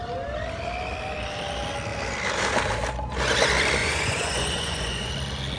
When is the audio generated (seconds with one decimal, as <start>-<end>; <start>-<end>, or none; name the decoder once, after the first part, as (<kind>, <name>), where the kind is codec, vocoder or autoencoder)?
3.8-5.1 (vocoder, Vocos)